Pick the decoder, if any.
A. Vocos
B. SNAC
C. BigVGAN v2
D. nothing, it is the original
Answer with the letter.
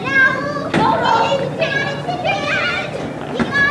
D